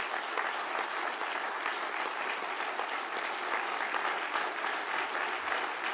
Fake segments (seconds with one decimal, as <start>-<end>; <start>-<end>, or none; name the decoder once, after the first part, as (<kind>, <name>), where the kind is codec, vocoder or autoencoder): none